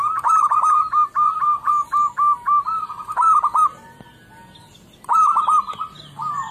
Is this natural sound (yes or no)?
yes